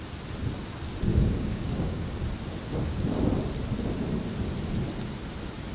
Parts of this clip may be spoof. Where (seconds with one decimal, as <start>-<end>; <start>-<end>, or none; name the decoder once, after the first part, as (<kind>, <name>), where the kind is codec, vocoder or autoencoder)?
1.1-2.0 (codec, DAC)